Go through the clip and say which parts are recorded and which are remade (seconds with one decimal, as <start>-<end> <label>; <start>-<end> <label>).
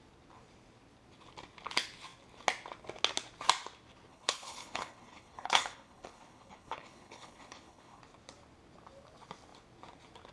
0.0-4.1 recorded; 4.1-8.0 remade; 8.0-10.3 recorded